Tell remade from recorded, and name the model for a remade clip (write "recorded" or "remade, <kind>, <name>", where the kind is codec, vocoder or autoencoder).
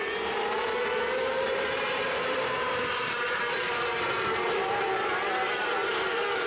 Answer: remade, vocoder, BigVGAN v2